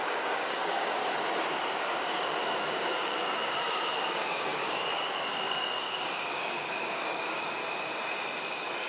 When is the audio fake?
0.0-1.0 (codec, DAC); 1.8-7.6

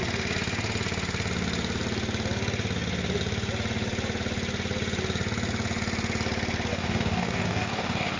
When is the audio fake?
6.7-8.2 (codec, DAC)

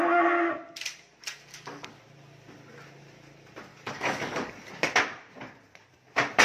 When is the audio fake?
1.5-2.0 (codec, DAC); 3.7-4.5

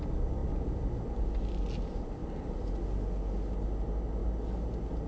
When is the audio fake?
none